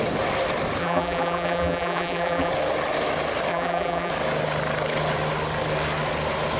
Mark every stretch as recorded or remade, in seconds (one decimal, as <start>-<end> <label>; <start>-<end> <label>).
0.0-0.8 recorded; 0.8-2.5 remade; 2.5-3.5 recorded; 3.5-4.1 remade; 4.1-6.6 recorded